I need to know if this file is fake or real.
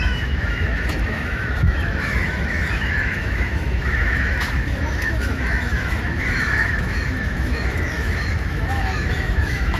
fake